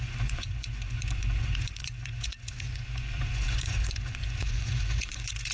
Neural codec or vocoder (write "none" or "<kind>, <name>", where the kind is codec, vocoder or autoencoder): vocoder, Vocos